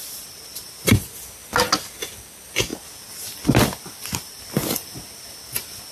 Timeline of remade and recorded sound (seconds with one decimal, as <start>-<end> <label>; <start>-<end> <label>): 0.0-5.9 recorded